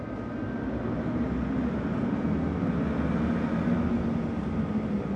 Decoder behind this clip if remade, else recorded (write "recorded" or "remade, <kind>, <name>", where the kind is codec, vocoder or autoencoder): recorded